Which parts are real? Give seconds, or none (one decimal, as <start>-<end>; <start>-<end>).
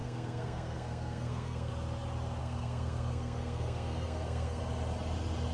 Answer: 1.7-2.4; 4.6-5.5